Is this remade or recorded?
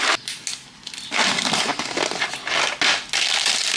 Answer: recorded